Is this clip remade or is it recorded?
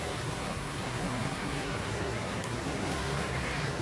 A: remade